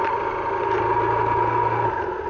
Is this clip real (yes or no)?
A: yes